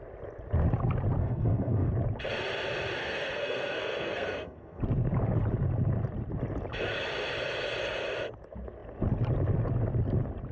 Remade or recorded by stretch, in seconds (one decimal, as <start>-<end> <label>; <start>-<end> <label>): 0.0-1.2 recorded; 1.2-1.9 remade; 1.9-3.0 recorded; 3.0-4.8 remade; 4.8-10.5 recorded